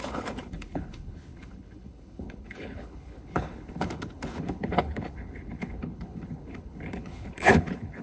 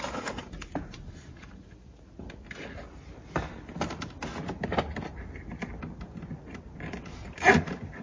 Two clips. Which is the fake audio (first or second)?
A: first